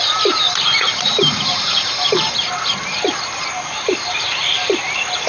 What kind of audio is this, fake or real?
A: fake